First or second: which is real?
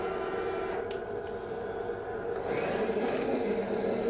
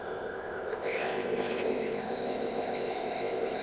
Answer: first